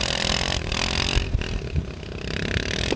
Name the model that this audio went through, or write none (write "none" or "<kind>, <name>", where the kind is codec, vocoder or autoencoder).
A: none